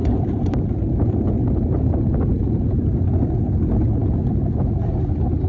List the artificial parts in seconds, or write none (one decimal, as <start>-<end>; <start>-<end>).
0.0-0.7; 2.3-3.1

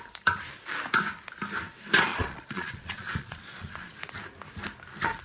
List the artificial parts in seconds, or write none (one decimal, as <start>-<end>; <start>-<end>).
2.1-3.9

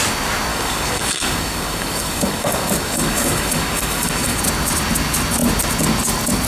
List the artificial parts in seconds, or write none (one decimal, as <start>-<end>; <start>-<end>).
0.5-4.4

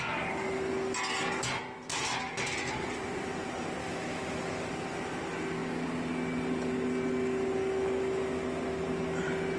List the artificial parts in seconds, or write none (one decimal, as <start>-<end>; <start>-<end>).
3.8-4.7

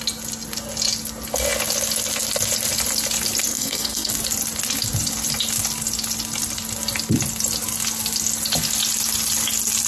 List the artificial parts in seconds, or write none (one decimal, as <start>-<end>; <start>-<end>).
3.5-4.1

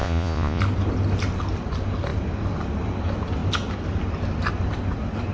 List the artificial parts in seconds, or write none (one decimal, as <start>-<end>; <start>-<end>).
0.0-0.6

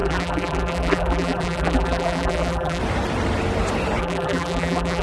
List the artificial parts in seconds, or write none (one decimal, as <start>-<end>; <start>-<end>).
0.0-2.8; 4.0-5.0